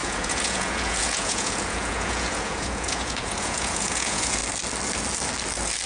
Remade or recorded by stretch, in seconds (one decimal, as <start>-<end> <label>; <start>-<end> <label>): 0.0-4.4 remade; 4.4-5.9 recorded